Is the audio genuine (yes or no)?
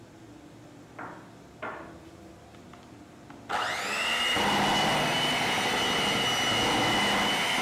yes